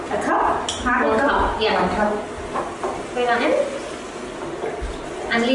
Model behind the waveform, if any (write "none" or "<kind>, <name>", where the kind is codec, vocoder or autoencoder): none